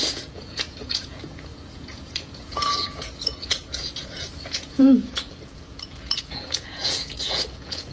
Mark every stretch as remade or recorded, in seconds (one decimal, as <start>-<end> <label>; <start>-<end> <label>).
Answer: 0.0-7.9 remade